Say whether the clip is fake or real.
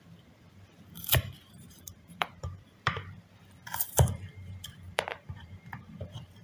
fake